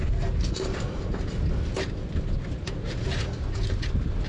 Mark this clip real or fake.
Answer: real